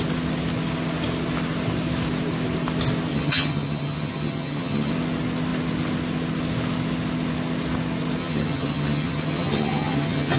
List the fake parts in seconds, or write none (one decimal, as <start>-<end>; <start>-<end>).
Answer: 3.1-4.9; 8.2-10.4